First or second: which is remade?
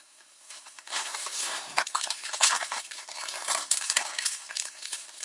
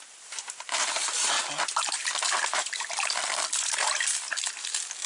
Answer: first